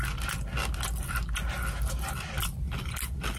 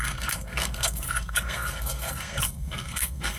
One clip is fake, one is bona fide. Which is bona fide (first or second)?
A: first